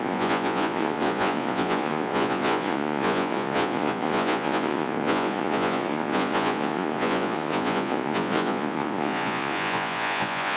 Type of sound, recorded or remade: remade